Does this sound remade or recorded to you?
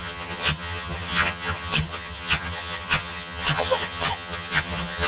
remade